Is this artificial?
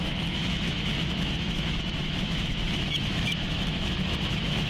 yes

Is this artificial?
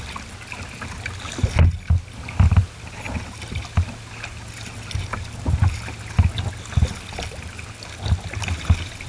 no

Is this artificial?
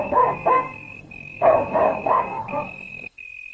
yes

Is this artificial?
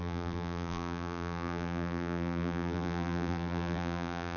yes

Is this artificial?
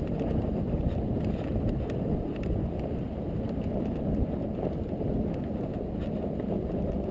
yes